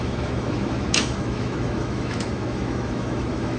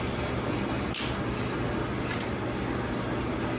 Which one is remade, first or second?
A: first